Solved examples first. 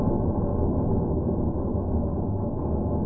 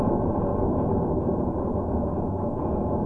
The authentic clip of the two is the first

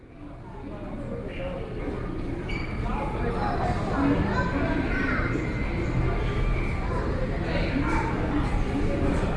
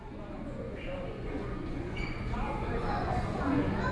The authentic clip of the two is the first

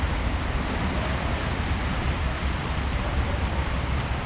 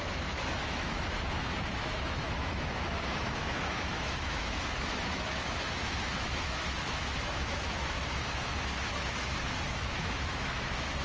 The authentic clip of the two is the first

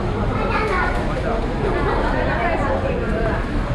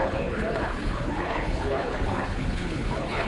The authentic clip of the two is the first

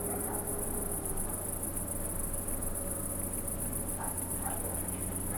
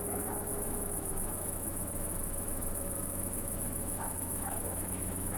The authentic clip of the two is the first